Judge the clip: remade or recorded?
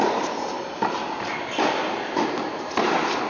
recorded